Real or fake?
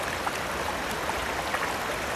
real